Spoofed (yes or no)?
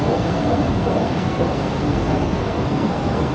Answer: yes